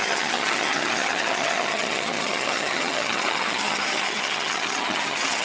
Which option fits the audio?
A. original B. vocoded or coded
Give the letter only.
B